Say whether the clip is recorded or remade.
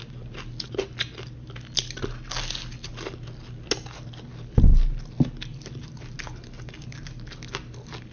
recorded